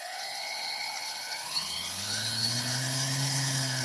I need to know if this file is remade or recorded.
remade